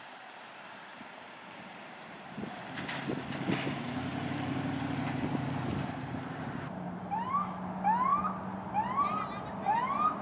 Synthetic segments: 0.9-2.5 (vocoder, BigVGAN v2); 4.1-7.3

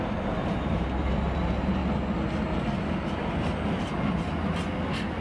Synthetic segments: 0.0-1.8 (vocoder, BigVGAN v2)

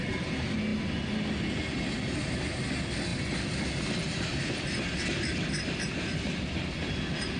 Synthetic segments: none